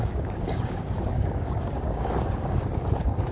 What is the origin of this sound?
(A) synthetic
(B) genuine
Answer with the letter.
A